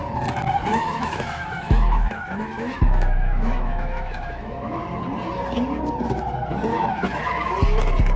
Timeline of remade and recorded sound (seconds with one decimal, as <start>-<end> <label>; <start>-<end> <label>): 0.0-0.7 recorded; 0.7-4.8 remade; 4.8-6.7 recorded; 6.7-7.5 remade; 7.5-8.2 recorded